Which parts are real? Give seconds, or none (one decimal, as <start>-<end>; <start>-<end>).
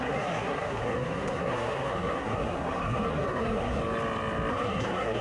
3.8-4.5